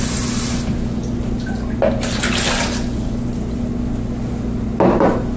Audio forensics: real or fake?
real